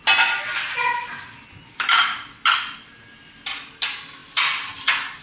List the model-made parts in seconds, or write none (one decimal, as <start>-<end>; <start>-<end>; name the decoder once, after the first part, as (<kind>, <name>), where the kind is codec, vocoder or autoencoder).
none